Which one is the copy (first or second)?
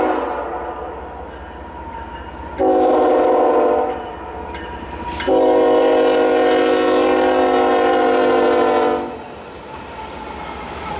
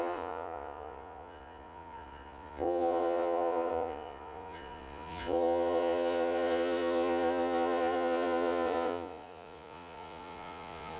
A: second